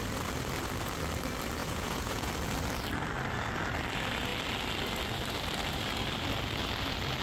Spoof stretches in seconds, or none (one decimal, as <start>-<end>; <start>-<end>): 1.6-2.3